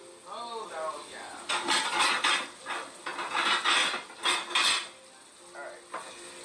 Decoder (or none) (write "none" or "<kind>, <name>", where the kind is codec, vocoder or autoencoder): none